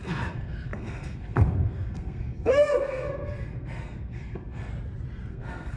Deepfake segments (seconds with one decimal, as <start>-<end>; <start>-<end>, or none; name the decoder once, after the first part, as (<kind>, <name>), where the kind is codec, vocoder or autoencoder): 0.0-4.7 (codec, SNAC); 5.3-5.8